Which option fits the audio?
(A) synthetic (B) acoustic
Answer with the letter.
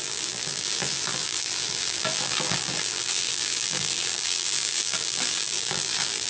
A